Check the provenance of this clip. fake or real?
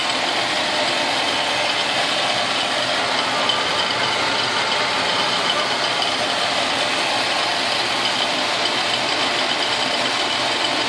real